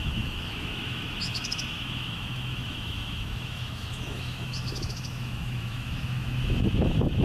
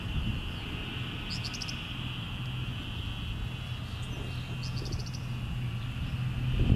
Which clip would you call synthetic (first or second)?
first